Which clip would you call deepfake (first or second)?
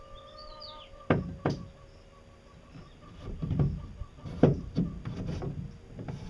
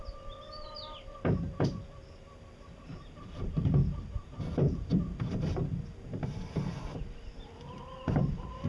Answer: second